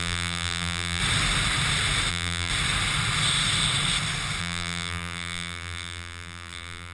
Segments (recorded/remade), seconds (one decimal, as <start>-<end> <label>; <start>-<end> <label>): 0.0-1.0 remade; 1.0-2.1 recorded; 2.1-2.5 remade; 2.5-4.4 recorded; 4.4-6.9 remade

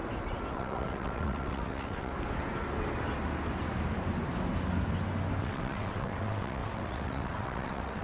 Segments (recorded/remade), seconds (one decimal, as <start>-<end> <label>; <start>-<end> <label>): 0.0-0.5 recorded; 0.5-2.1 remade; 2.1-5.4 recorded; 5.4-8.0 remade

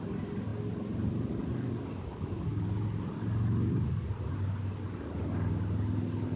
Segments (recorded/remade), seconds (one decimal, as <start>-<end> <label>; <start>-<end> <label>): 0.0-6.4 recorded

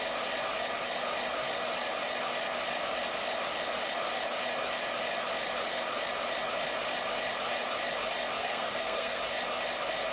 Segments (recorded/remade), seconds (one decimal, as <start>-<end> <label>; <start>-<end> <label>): 0.0-8.4 recorded; 8.4-9.2 remade; 9.2-10.1 recorded

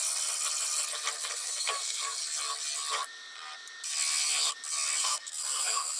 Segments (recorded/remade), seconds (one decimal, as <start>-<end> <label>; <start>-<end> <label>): 0.0-1.3 recorded; 1.3-2.2 remade; 2.2-5.0 recorded; 5.0-6.0 remade

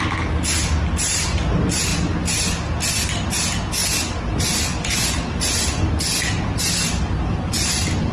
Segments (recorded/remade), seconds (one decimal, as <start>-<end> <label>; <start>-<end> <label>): 0.0-8.1 recorded